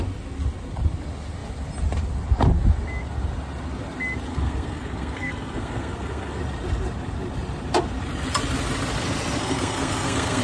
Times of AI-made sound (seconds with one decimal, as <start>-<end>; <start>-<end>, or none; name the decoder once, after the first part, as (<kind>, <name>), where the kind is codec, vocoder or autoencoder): 4.3-6.4 (codec, SNAC); 9.4-10.4